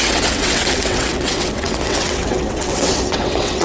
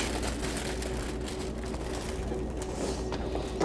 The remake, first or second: first